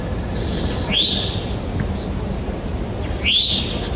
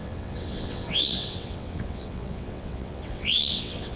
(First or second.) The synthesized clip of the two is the second